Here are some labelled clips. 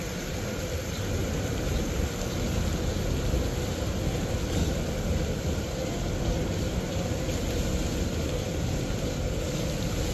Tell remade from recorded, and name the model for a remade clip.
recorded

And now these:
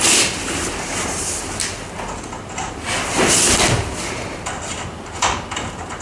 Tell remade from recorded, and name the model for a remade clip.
recorded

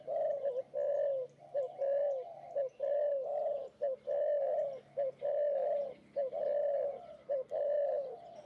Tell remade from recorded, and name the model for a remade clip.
recorded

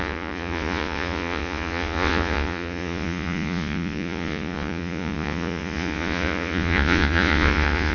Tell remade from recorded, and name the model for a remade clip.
remade, vocoder, Vocos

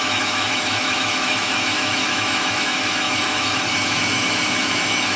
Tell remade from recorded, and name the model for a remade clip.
remade, autoencoder, DAC-VAE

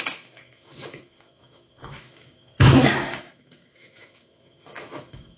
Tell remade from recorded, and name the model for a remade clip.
remade, autoencoder, DAC-VAE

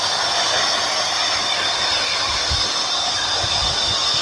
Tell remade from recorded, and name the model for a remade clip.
recorded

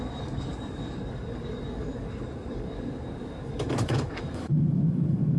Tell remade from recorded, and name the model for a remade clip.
remade, codec, DAC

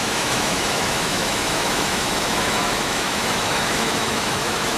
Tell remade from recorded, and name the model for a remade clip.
remade, autoencoder, DAC-VAE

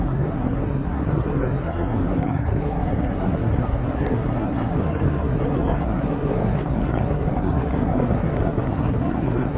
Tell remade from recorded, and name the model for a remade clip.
remade, codec, SNAC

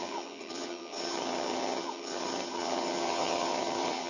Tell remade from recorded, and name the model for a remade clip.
remade, vocoder, HiFi-GAN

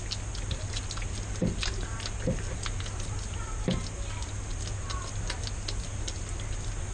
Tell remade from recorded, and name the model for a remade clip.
recorded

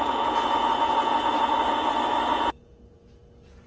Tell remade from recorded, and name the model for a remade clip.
remade, vocoder, Vocos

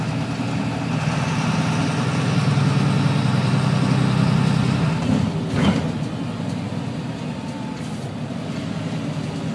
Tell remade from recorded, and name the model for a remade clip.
recorded